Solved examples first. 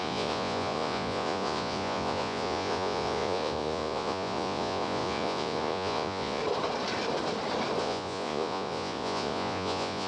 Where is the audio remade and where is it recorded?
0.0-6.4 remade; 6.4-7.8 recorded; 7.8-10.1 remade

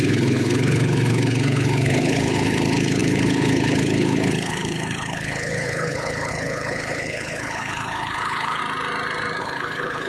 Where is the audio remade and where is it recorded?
0.0-8.6 remade; 8.6-9.4 recorded; 9.4-10.1 remade